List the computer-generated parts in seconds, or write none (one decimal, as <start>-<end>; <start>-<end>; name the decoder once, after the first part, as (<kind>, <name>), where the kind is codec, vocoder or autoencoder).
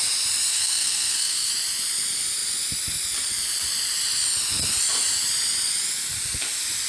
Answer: 0.5-1.5 (codec, SNAC)